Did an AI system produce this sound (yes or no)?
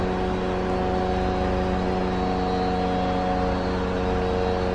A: no